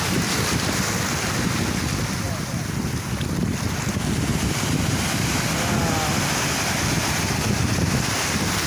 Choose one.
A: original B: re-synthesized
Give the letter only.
A